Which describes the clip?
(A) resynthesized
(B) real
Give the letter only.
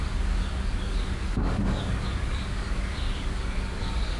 A